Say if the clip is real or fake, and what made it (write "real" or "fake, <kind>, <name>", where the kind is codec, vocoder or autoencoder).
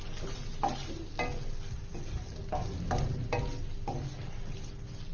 real